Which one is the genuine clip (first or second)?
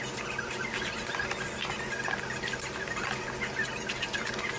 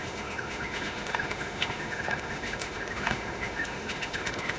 first